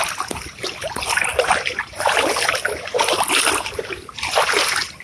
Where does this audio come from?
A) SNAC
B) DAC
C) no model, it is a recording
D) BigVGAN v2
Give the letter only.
D